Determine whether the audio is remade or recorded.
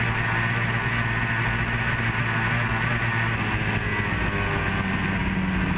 recorded